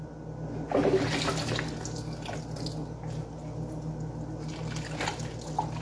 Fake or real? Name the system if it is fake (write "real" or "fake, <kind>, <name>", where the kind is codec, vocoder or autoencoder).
real